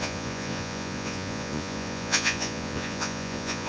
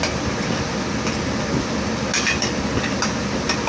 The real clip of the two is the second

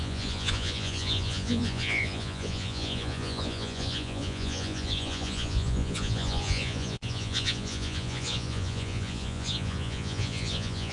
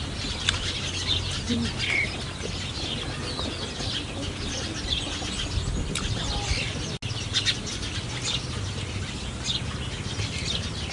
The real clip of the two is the second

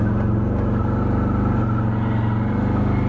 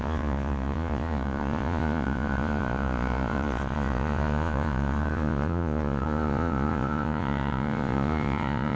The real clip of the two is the first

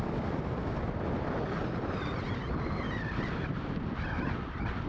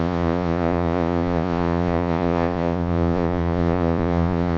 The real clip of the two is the first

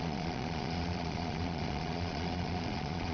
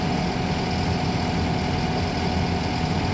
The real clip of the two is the second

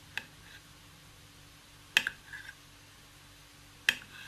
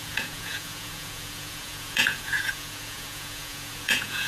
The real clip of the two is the first